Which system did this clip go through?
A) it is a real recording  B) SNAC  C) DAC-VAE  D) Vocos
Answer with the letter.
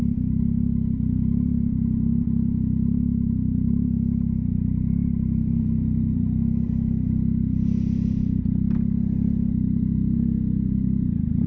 A